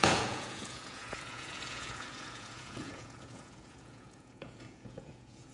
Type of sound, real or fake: fake